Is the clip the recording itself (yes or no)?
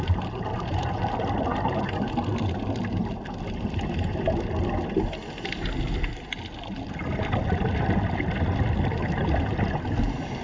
yes